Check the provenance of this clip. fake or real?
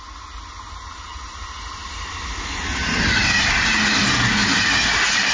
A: real